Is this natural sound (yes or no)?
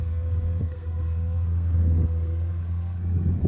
no